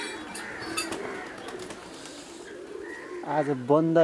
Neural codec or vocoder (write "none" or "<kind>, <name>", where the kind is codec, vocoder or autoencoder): none